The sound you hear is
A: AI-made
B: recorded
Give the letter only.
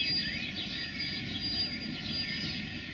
B